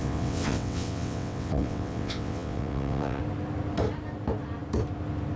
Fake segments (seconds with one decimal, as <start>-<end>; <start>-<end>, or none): 0.0-3.2